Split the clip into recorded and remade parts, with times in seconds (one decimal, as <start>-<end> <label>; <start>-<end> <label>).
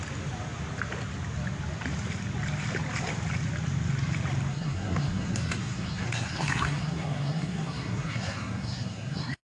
0.0-4.5 recorded; 4.5-9.6 remade